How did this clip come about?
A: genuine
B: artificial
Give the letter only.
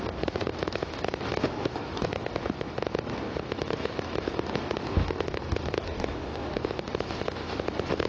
B